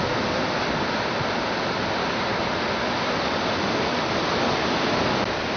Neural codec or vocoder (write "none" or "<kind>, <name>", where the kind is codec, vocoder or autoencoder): none